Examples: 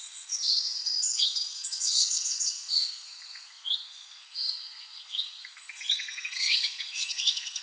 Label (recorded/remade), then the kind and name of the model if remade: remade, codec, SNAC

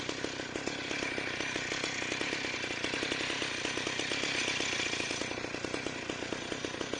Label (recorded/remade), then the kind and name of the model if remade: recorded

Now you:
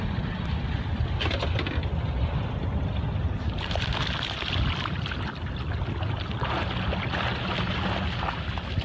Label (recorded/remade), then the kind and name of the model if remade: recorded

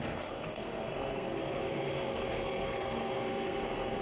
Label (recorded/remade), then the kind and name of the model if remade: remade, codec, SNAC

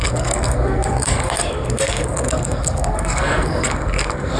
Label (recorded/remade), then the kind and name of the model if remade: remade, codec, SNAC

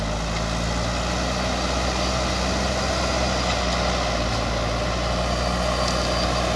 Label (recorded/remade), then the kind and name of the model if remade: recorded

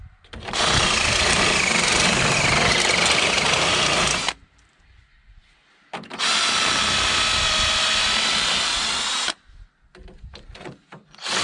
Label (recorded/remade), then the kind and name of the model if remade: recorded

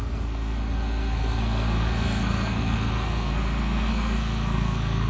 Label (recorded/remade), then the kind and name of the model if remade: remade, codec, SNAC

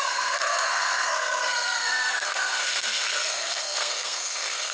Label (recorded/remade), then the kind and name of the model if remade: remade, codec, SNAC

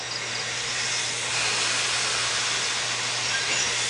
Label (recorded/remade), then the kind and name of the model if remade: recorded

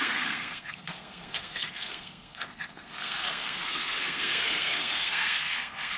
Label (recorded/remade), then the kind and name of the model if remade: remade, codec, SNAC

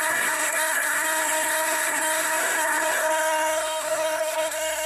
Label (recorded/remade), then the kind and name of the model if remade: remade, codec, SNAC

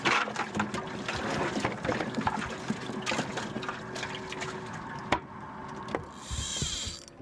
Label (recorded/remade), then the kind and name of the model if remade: recorded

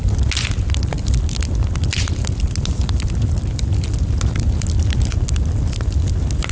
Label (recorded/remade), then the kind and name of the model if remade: recorded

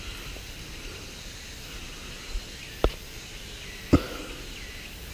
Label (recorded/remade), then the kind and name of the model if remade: recorded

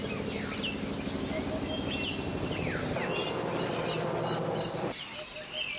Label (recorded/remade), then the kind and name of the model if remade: recorded